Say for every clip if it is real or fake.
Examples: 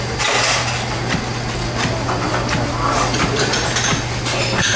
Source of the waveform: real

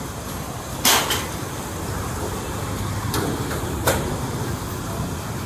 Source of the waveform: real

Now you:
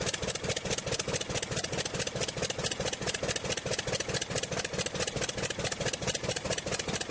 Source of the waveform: real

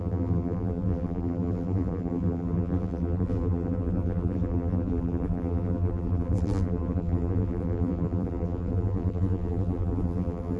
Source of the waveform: fake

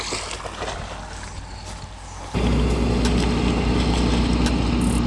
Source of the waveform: real